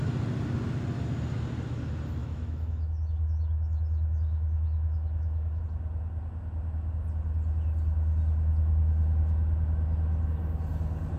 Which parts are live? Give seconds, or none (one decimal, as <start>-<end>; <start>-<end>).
0.0-2.2; 5.6-11.2

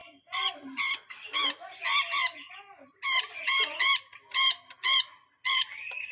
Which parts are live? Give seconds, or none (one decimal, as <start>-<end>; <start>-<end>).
0.0-6.1

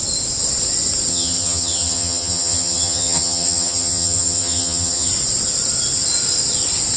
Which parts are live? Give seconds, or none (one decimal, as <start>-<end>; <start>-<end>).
0.0-1.1; 5.1-7.0